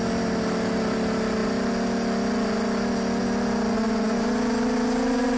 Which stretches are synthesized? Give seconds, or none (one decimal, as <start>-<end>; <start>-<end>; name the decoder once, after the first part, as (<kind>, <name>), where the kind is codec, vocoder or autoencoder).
none